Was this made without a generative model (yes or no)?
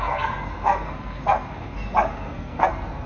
no